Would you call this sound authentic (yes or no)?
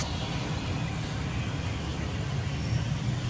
yes